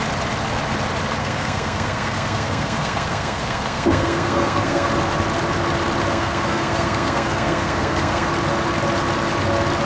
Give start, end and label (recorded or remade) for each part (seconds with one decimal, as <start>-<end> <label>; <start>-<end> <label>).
0.0-1.2 recorded; 1.2-4.9 remade; 4.9-6.1 recorded; 6.1-8.3 remade; 8.3-9.9 recorded